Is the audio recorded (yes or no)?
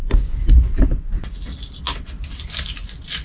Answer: yes